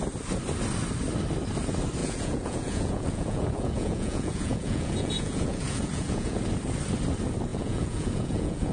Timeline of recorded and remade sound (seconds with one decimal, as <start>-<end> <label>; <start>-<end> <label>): 0.0-2.0 recorded; 2.0-6.4 remade; 6.4-7.5 recorded; 7.5-8.7 remade